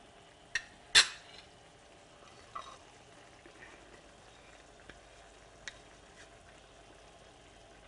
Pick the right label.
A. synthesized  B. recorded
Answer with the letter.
B